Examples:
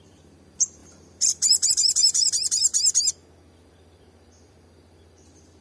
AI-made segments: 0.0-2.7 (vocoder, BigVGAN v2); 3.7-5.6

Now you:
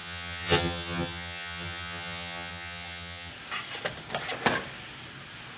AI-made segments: 0.0-3.3 (vocoder, HiFi-GAN)

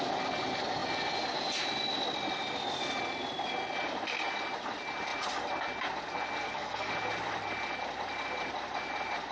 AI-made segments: 6.4-6.9 (codec, SNAC)

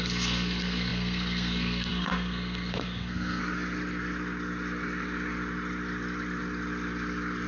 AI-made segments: 0.0-3.4 (codec, SNAC)